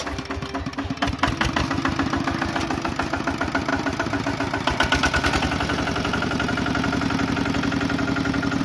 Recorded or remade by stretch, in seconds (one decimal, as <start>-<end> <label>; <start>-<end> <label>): 0.0-8.6 recorded